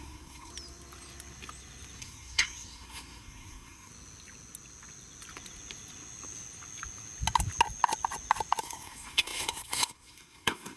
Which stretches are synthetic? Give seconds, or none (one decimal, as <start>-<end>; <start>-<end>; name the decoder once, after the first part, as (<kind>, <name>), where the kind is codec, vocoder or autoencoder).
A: 0.0-0.5 (codec, SNAC); 2.0-3.9; 8.6-10.8